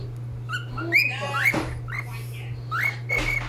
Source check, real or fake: real